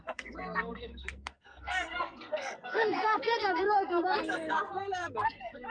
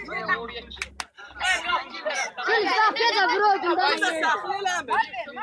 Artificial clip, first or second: first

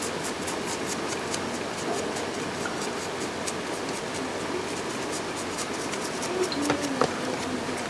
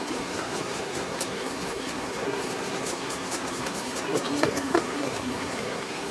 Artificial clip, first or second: second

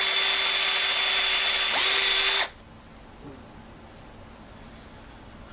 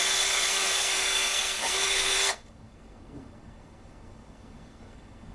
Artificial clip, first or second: second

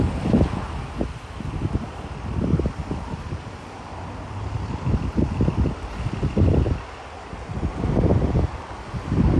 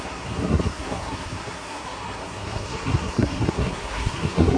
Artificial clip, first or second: second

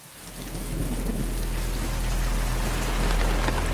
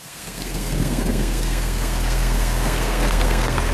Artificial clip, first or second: second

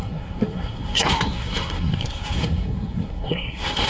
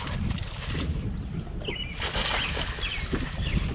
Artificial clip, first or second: first